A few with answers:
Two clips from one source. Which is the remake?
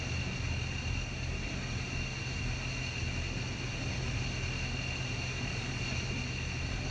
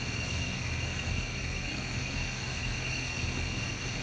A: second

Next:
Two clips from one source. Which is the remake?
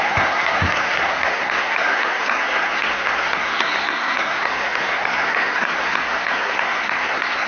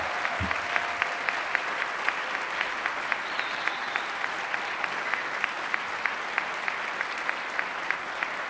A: first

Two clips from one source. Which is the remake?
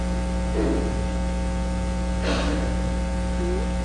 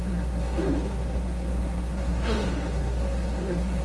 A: second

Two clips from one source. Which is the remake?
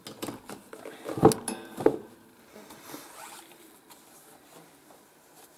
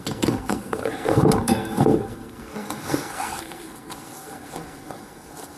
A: second